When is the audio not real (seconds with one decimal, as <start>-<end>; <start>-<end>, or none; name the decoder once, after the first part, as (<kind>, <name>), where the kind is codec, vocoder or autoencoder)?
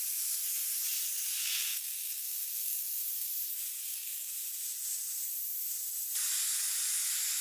1.4-3.3 (codec, SNAC); 3.8-4.3